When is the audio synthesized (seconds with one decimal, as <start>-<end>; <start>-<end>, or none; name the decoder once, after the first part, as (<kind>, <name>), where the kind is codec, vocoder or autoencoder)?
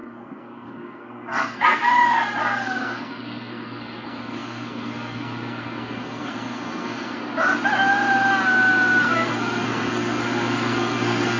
0.0-1.9 (codec, SNAC); 2.4-7.2; 9.0-11.4